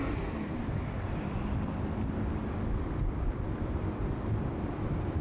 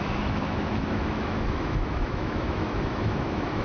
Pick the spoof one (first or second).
second